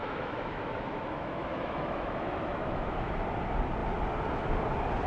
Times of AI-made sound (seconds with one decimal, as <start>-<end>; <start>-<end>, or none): 0.0-3.1